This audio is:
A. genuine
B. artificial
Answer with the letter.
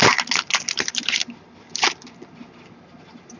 A